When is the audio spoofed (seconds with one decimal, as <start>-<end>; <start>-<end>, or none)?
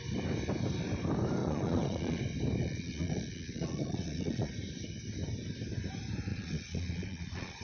1.4-2.2; 2.6-4.5; 6.3-7.6